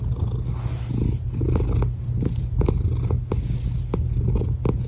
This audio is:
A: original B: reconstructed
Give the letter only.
A